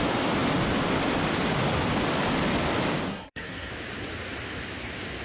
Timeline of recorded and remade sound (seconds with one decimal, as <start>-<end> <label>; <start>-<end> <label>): 0.0-3.1 recorded; 3.1-3.7 remade; 3.7-5.2 recorded